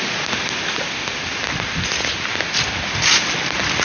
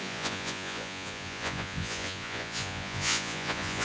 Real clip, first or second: first